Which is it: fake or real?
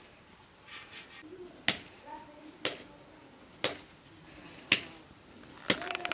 real